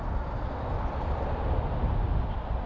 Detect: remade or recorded recorded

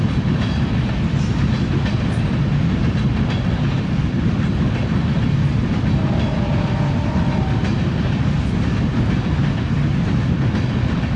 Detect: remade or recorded recorded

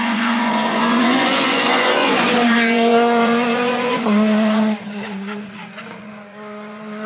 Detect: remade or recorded remade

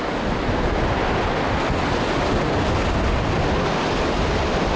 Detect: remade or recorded recorded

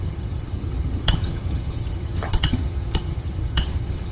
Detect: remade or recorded remade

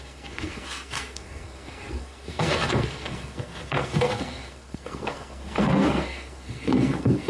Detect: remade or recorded remade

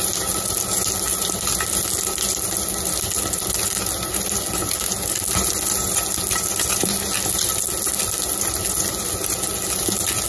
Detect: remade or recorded recorded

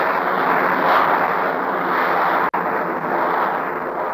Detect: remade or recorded recorded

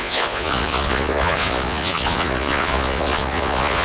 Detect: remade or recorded remade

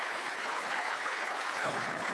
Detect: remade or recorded remade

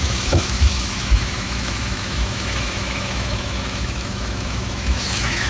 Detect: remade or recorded remade